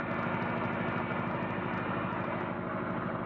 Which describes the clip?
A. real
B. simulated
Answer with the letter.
A